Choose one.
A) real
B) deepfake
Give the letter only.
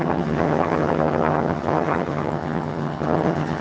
B